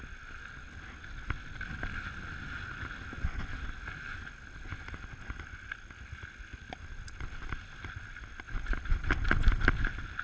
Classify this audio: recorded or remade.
recorded